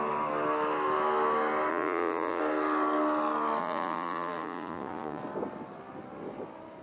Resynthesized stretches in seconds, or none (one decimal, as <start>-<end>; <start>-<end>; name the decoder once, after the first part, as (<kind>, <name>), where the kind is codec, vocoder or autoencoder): 1.7-2.4 (vocoder, Vocos); 3.6-5.2